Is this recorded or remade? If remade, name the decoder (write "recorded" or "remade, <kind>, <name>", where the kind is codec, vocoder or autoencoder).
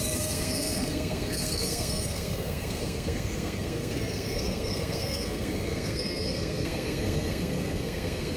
remade, codec, SNAC